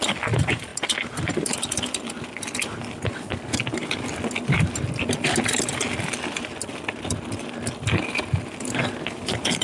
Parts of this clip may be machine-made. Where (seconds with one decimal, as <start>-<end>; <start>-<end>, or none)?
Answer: none